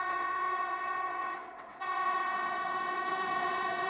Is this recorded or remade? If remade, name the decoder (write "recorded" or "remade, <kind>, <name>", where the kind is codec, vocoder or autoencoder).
remade, vocoder, WaveNeXt